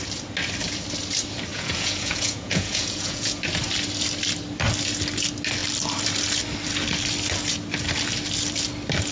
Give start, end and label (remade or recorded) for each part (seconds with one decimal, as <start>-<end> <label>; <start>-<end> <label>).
0.0-1.5 recorded; 1.5-3.4 remade; 3.4-9.1 recorded